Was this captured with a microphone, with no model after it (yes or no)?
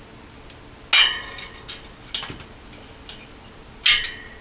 yes